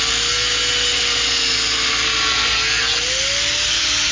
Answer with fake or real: real